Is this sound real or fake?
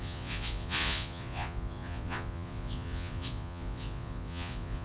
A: fake